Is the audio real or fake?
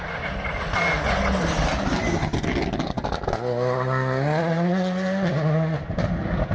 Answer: real